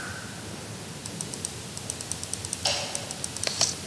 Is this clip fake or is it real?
real